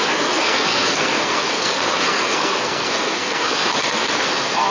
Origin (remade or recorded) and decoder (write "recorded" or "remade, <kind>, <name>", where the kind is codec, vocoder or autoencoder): remade, codec, SNAC